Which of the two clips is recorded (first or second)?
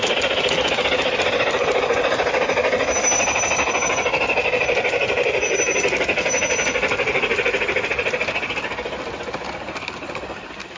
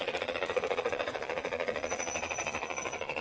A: first